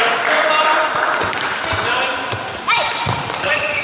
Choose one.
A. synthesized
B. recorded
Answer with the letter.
A